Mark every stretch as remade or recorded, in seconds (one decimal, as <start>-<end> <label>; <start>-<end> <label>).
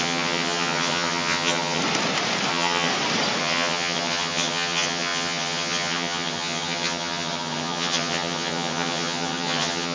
0.0-1.8 remade; 1.8-2.5 recorded; 2.5-2.9 remade; 2.9-3.4 recorded; 3.4-9.9 remade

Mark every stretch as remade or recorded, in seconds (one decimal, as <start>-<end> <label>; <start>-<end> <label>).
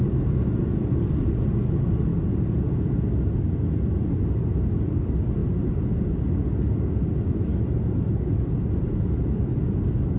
0.0-10.2 recorded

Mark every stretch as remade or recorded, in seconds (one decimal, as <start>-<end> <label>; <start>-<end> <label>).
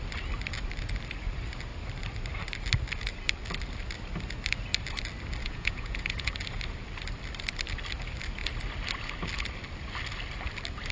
0.0-5.4 recorded; 5.4-6.3 remade; 6.3-10.9 recorded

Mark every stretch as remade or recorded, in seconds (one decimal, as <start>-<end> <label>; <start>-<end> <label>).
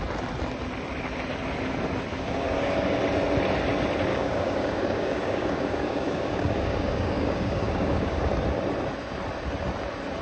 0.0-2.1 recorded; 2.1-3.0 remade; 3.0-4.1 recorded; 4.1-8.3 remade; 8.3-10.2 recorded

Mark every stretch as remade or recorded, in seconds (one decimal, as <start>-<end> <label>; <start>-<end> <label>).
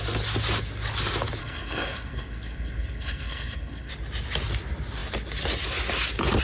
0.0-1.4 recorded; 1.4-3.9 remade; 3.9-6.4 recorded